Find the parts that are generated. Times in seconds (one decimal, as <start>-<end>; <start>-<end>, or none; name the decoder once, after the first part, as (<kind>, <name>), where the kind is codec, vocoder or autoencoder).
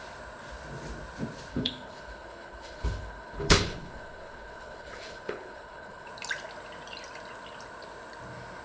1.5-6.1 (codec, HILCodec)